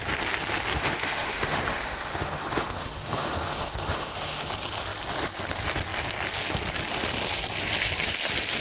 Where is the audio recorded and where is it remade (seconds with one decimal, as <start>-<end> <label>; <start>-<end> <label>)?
0.0-0.7 recorded; 0.7-4.5 remade; 4.5-8.6 recorded